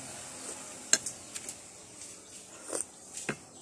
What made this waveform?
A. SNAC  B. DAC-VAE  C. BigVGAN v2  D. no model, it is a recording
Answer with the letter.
D